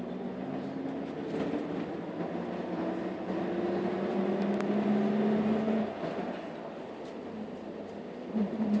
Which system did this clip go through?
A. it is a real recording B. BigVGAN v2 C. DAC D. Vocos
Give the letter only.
A